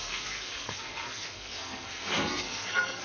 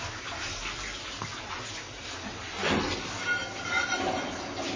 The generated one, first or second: first